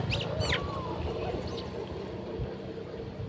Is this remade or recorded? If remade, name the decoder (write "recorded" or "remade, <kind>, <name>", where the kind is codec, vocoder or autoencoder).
recorded